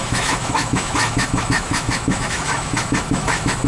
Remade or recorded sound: remade